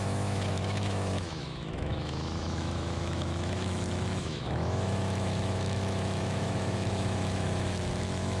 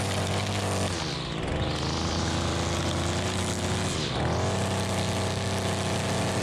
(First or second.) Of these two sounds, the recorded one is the second